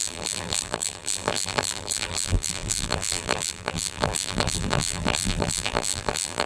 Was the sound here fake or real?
fake